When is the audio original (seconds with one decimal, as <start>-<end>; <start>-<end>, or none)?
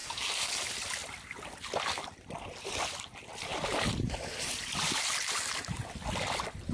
0.5-6.7